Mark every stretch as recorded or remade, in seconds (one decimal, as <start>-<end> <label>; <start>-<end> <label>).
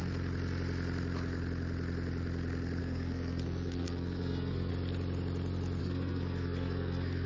0.0-2.8 recorded; 2.8-4.7 remade; 4.7-5.8 recorded; 5.8-7.3 remade